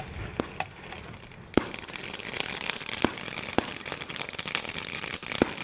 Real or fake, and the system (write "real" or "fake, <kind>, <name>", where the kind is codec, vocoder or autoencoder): real